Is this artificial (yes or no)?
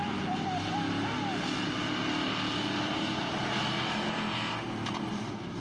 no